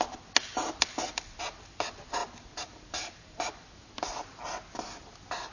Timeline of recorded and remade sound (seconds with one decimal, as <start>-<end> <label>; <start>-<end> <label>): 0.0-5.5 recorded